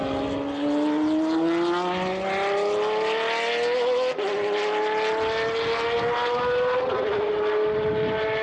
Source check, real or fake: real